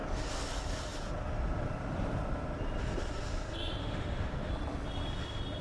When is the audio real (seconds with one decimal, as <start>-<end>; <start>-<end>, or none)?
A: 0.0-3.8; 4.5-5.6